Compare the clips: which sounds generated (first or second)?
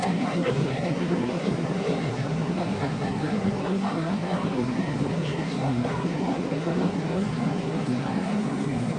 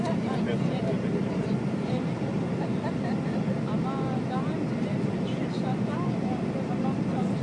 first